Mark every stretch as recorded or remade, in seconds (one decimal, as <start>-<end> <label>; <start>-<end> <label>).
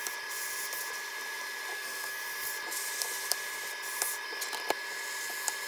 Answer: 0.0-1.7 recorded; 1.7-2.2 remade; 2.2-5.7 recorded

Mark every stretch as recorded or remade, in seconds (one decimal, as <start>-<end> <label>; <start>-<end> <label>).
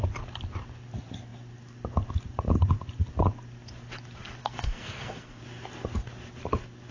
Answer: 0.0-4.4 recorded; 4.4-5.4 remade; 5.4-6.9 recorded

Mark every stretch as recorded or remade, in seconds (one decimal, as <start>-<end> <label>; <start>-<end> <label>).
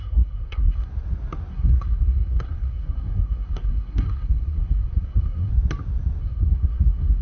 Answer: 0.0-0.9 remade; 0.9-1.5 recorded; 1.5-5.5 remade; 5.5-6.2 recorded; 6.2-7.2 remade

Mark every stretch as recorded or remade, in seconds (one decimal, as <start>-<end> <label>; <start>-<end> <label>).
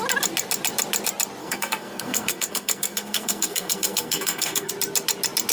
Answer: 0.0-1.4 recorded; 1.4-4.7 remade; 4.7-5.5 recorded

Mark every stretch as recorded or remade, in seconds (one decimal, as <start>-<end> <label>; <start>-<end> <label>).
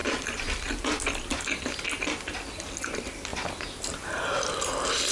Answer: 0.0-5.1 recorded